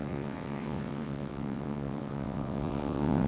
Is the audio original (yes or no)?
no